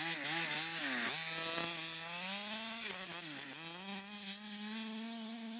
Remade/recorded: recorded